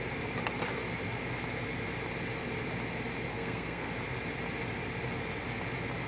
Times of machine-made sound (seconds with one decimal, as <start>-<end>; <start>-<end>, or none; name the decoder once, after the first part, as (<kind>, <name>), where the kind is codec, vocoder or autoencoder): 3.3-3.9 (codec, SNAC)